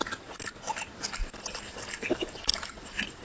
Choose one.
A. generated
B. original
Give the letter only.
B